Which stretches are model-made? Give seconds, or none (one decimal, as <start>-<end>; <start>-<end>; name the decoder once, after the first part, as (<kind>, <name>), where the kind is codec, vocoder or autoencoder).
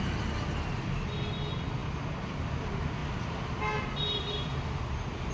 none